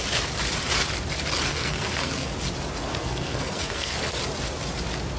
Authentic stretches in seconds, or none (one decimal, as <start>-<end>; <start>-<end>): 0.0-1.5; 2.3-2.9; 4.0-5.2